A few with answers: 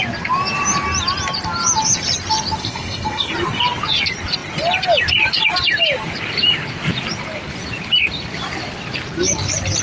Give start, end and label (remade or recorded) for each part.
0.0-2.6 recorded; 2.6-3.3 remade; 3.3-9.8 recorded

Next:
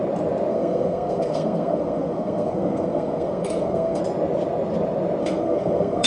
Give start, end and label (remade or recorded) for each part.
0.0-0.5 recorded; 0.5-4.0 remade; 4.0-5.2 recorded; 5.2-6.1 remade

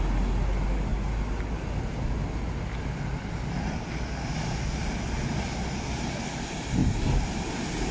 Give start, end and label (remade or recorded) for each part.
0.0-7.9 recorded